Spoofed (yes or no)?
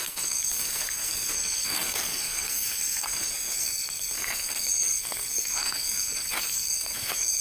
yes